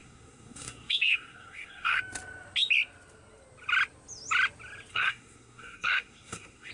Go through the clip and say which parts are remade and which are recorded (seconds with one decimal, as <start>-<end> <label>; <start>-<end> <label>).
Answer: 0.0-2.0 remade; 2.0-4.9 recorded; 4.9-6.7 remade